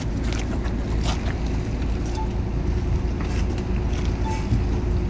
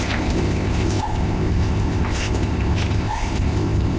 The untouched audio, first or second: first